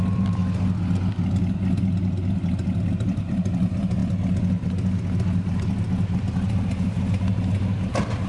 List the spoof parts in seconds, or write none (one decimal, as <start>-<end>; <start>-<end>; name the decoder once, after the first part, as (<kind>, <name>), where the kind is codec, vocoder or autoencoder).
0.0-0.4 (vocoder, BigVGAN v2); 2.9-4.0; 7.9-8.3